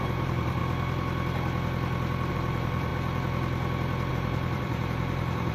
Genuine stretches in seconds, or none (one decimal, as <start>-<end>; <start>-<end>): 0.6-2.3; 2.9-4.1